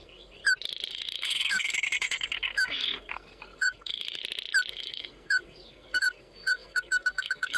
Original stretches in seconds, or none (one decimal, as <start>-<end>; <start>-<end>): 0.4-0.9; 4.2-4.7